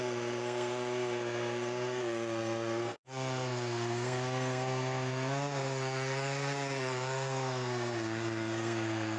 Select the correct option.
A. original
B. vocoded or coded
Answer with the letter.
B